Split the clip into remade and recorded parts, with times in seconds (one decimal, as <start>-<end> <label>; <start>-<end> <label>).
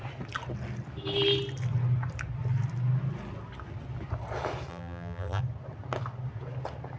0.0-4.7 recorded; 4.7-5.4 remade; 5.4-7.0 recorded